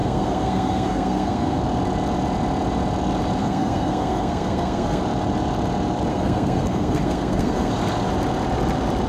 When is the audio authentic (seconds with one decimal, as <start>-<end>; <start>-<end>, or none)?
1.6-3.4; 5.0-6.1; 7.7-9.1